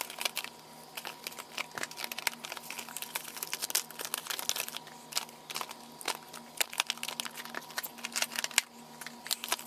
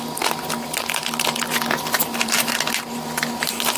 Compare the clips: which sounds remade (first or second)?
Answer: second